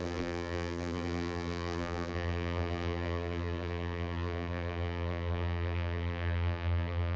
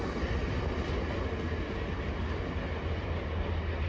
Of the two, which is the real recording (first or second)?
second